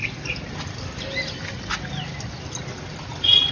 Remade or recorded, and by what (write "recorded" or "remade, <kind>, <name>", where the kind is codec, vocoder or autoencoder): recorded